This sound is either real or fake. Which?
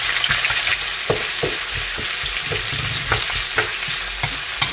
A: real